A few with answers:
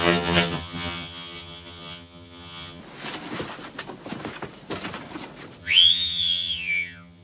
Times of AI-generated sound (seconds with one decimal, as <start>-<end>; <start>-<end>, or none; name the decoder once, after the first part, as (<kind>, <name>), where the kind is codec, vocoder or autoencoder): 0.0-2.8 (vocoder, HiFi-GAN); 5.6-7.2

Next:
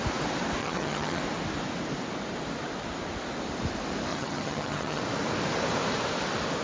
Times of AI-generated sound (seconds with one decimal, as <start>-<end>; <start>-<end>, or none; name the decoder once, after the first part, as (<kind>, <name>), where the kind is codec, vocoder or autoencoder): 0.6-1.2 (vocoder, HiFi-GAN); 4.1-5.0

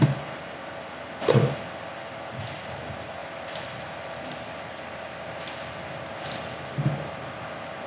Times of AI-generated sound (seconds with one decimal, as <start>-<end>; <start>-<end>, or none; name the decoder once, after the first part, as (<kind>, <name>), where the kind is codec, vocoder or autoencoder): none

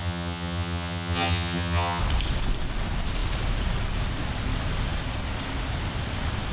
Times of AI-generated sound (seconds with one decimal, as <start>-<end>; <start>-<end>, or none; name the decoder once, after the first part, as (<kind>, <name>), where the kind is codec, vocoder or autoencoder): 0.0-2.0 (vocoder, HiFi-GAN)

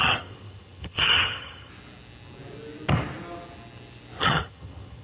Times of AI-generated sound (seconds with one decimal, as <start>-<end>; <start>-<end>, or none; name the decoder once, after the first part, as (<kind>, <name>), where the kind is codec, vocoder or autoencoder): 0.0-1.7 (vocoder, HiFi-GAN); 4.2-5.0

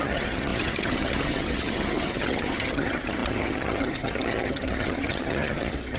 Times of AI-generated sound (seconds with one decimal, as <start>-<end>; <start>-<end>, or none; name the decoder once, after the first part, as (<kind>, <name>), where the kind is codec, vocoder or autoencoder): 0.0-6.0 (vocoder, HiFi-GAN)

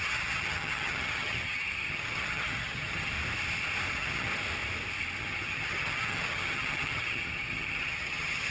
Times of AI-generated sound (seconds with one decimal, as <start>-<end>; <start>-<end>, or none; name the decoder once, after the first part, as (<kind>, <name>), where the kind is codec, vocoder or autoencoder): 0.0-3.1 (vocoder, HiFi-GAN); 3.9-4.3; 5.2-8.5

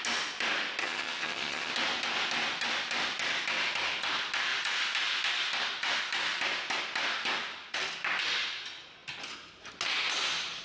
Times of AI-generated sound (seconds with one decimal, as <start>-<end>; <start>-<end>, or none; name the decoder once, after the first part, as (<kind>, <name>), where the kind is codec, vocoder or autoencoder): 0.8-1.7 (vocoder, HiFi-GAN)